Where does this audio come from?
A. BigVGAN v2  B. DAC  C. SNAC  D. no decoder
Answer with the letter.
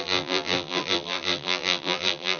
A